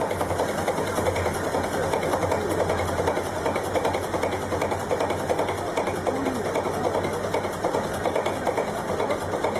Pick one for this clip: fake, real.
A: real